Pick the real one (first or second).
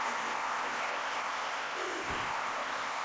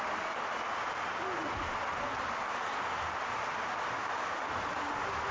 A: second